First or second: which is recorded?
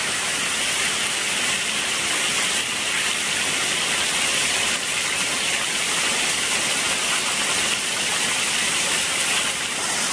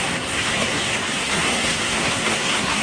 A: first